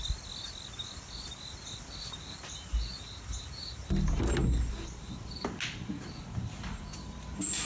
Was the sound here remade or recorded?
recorded